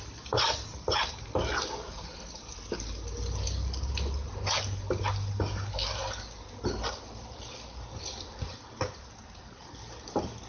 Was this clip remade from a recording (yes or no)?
no